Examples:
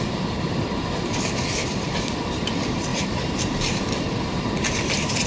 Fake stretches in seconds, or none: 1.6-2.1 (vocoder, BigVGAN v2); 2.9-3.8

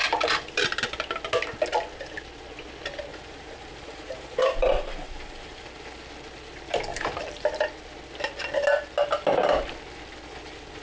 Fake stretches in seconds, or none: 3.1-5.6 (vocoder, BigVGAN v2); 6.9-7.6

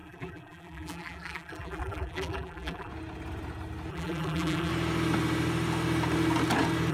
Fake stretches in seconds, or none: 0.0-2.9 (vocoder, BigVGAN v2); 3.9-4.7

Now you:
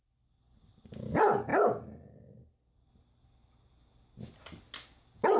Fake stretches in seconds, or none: none

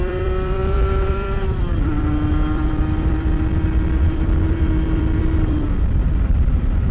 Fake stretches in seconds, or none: 0.0-6.9 (vocoder, BigVGAN v2)

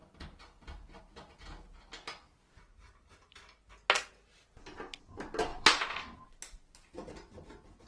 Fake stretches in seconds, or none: 0.0-1.0 (vocoder, BigVGAN v2); 5.5-6.2